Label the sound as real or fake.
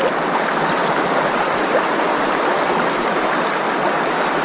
real